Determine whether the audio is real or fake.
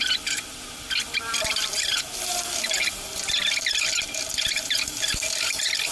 fake